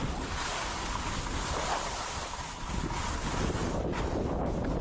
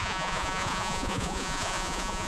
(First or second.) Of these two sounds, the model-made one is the second